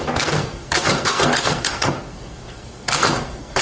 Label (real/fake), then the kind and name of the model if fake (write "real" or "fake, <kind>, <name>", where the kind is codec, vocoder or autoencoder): fake, codec, SNAC